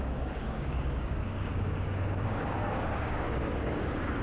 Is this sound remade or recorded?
remade